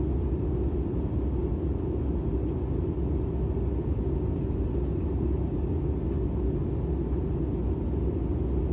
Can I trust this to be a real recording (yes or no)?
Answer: yes